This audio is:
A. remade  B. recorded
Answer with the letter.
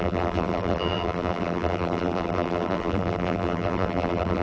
A